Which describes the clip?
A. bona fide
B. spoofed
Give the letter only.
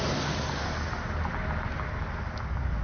A